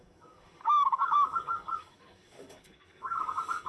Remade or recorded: remade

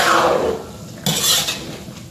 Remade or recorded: recorded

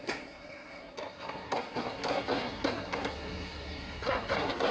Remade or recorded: remade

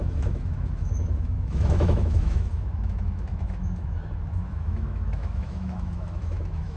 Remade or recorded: remade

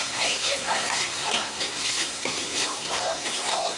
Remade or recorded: remade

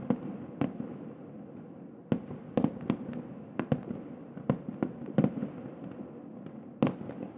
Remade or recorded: recorded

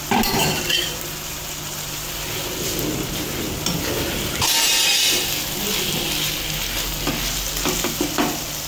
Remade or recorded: recorded